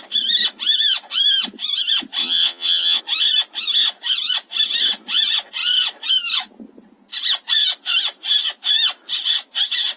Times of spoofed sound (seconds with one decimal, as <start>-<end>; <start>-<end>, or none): 2.2-3.0